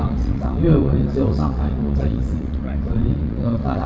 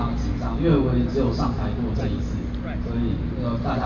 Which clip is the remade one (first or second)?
first